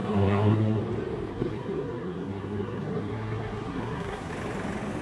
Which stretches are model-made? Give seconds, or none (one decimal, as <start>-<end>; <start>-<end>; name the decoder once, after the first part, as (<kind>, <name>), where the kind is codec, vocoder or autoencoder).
0.0-0.8 (codec, SNAC); 1.3-4.3

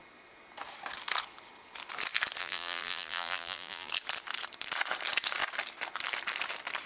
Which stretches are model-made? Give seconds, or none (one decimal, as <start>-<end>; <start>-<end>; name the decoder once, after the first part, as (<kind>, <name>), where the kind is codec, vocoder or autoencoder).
2.4-3.9 (vocoder, BigVGAN v2)

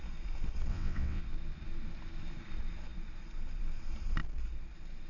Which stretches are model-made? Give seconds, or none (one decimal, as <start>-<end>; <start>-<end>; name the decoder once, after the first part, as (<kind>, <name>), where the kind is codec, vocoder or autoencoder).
0.7-1.2 (vocoder, WaveNeXt)

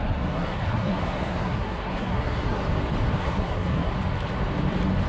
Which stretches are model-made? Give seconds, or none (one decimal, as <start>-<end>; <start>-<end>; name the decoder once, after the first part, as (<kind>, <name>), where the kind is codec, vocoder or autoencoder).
0.0-2.6 (codec, SNAC); 3.2-3.9